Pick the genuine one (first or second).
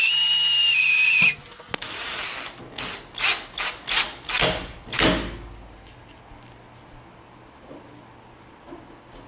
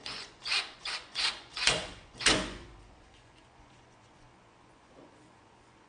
first